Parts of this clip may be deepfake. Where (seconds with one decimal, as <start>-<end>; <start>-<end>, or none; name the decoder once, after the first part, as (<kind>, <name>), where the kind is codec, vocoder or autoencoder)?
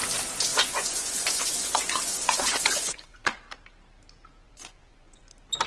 0.5-3.4 (vocoder, Vocos); 4.4-5.2